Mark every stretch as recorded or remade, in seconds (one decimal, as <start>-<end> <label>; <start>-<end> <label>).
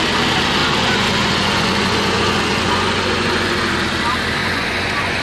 0.0-0.6 recorded; 0.6-3.7 remade; 3.7-4.4 recorded; 4.4-5.2 remade